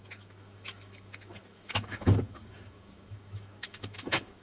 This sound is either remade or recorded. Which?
remade